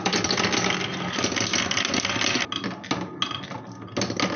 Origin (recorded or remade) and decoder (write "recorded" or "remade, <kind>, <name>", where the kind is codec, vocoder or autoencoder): recorded